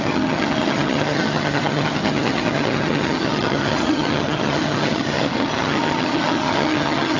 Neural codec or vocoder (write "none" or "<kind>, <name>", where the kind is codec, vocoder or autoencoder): vocoder, HiFi-GAN